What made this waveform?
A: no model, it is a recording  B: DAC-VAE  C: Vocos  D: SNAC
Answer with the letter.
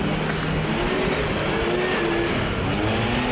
A